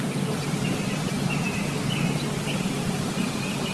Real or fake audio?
real